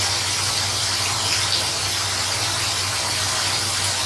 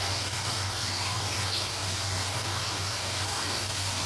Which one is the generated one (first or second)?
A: second